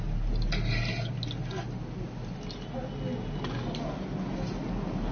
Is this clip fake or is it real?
real